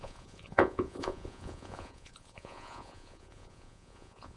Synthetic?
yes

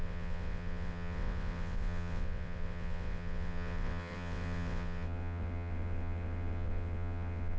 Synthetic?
yes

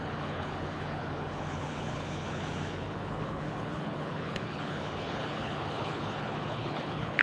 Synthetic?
yes